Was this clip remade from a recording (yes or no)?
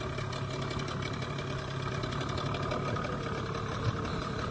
no